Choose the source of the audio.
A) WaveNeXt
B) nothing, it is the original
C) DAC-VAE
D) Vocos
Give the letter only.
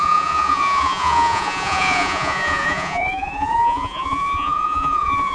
D